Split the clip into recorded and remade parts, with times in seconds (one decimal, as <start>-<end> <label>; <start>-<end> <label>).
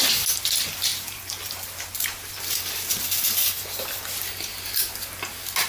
0.0-0.9 recorded; 0.9-2.9 remade; 2.9-4.5 recorded; 4.5-5.7 remade